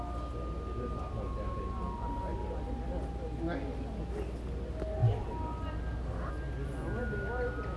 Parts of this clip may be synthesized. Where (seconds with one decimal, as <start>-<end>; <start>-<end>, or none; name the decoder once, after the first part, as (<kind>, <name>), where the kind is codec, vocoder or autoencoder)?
none